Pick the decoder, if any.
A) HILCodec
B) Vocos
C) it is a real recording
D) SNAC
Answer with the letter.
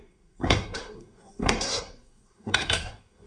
D